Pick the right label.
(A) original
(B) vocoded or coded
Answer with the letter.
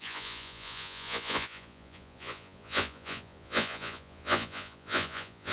B